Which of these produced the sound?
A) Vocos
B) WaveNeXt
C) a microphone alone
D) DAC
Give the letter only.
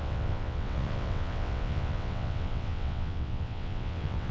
B